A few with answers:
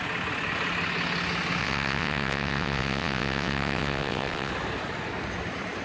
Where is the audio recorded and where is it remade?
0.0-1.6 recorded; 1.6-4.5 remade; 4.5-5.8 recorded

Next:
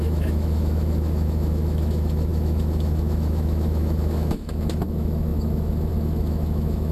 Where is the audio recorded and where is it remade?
0.0-6.9 remade